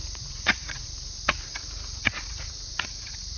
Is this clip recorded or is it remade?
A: remade